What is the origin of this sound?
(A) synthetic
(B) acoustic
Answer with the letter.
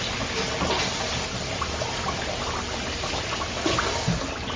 B